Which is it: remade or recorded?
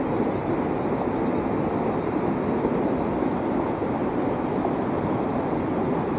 recorded